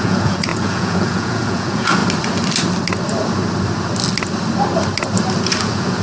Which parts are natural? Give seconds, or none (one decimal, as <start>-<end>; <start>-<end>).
2.0-5.6